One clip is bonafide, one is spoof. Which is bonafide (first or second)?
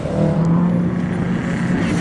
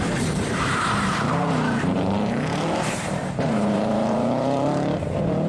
first